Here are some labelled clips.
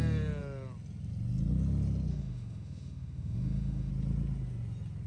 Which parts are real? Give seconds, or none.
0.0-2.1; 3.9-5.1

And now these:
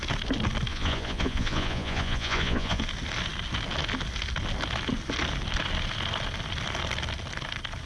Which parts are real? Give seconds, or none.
0.0-0.7; 2.8-7.9

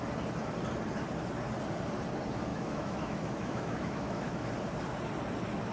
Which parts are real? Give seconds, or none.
0.0-2.5; 4.5-5.7

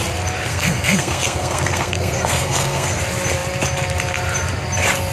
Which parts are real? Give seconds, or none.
0.0-0.5; 3.0-5.1